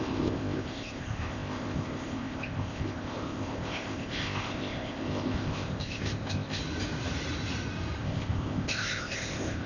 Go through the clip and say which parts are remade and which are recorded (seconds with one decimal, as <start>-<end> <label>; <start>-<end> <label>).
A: 0.0-6.6 remade; 6.6-8.0 recorded; 8.0-9.7 remade